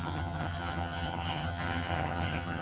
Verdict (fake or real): fake